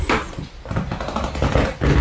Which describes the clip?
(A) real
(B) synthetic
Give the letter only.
A